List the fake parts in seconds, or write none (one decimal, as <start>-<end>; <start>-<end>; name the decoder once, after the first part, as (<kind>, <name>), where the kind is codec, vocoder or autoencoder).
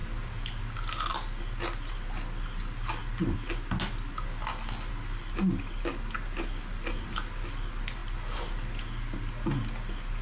none